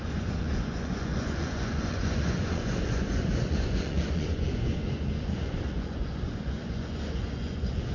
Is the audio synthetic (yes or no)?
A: yes